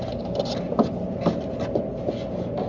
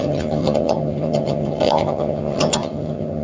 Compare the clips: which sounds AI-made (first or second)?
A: second